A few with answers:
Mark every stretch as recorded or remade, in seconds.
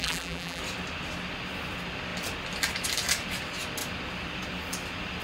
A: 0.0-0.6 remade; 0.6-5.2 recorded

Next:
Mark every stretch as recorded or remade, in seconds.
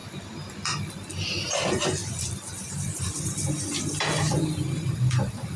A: 0.0-1.6 remade; 1.6-2.0 recorded; 2.0-4.4 remade; 4.4-5.6 recorded